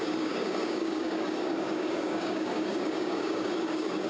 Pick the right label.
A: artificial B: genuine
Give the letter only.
A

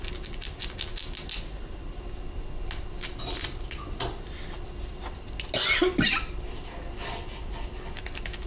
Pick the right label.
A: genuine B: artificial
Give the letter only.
A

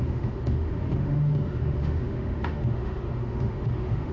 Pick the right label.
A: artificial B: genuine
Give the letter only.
A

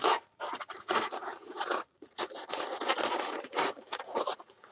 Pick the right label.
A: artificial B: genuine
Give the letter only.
A